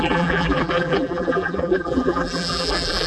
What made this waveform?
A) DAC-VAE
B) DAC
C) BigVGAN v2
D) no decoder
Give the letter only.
C